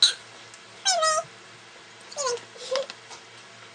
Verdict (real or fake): real